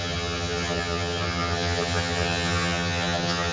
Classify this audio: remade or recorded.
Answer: remade